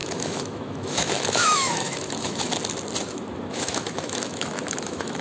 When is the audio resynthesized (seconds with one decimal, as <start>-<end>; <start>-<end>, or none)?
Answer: 0.0-2.5; 3.5-5.2